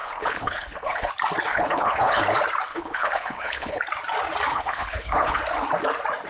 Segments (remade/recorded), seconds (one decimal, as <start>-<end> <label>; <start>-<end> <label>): 0.0-1.1 remade; 1.1-1.5 recorded; 1.5-2.2 remade; 2.2-2.7 recorded; 2.7-3.8 remade; 3.8-4.5 recorded; 4.5-5.4 remade; 5.4-6.3 recorded